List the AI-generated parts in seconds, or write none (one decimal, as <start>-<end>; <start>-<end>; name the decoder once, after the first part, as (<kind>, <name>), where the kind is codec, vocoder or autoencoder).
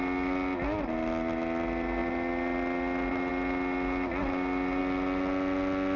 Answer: none